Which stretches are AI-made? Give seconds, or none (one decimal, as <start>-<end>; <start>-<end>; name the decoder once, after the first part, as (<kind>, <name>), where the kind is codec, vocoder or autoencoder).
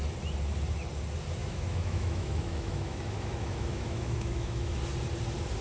1.4-4.8 (autoencoder, DAC-VAE)